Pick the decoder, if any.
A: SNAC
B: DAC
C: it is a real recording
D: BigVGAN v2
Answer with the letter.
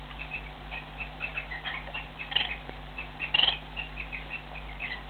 D